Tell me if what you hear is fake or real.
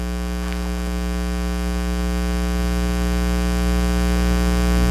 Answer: real